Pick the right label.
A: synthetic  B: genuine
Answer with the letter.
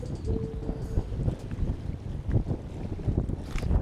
B